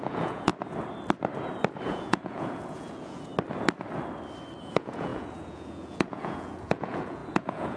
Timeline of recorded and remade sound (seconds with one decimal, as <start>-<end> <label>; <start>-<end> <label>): 0.0-0.5 remade; 0.5-1.8 recorded; 1.8-3.3 remade; 3.3-4.6 recorded; 4.6-7.8 remade